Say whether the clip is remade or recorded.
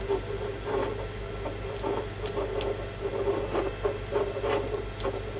recorded